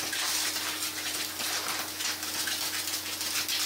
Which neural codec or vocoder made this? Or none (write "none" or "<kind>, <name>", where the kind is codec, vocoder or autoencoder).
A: none